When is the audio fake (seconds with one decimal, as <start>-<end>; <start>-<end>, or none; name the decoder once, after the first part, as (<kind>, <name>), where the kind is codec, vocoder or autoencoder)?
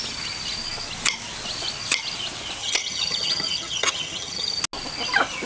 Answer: 2.6-4.6 (vocoder, HiFi-GAN)